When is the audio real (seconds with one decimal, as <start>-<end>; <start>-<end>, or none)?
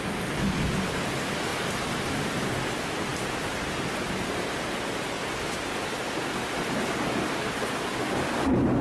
0.0-8.8